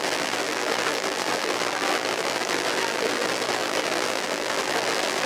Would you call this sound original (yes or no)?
no